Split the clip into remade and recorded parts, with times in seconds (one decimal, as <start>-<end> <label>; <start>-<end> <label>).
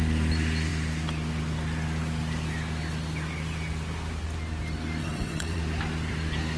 0.0-5.0 recorded; 5.0-5.6 remade; 5.6-6.6 recorded